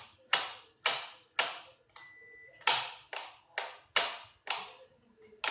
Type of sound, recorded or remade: recorded